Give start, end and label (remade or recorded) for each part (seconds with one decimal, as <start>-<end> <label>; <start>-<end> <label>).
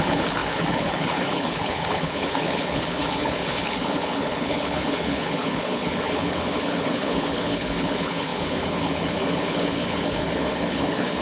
0.0-11.2 remade